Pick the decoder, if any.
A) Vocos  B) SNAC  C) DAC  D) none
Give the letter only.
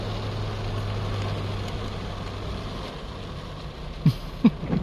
D